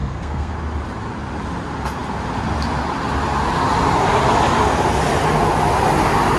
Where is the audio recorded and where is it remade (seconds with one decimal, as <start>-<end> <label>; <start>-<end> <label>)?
0.0-0.5 remade; 0.5-6.4 recorded